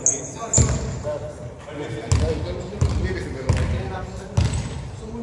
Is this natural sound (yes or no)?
yes